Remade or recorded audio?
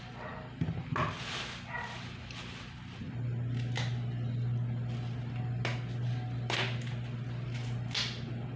recorded